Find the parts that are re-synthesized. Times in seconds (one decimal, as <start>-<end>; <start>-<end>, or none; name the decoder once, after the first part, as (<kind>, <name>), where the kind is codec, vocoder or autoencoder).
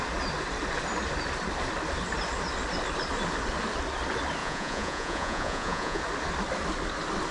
4.4-6.0 (vocoder, Vocos)